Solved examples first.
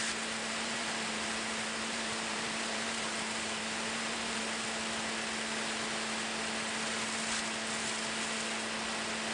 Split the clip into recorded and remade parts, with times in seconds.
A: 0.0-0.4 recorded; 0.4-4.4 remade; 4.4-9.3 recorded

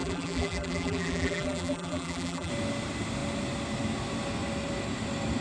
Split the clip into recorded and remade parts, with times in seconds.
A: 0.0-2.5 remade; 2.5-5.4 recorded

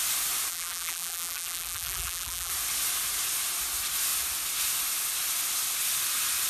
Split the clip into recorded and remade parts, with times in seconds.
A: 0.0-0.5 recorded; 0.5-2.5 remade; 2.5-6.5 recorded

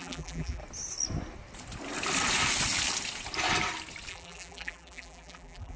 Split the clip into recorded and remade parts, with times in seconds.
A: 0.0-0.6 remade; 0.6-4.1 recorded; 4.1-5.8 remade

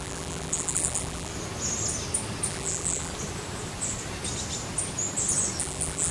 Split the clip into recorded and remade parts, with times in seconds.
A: 0.0-1.3 remade; 1.3-2.5 recorded; 2.5-3.1 remade; 3.1-5.6 recorded; 5.6-6.1 remade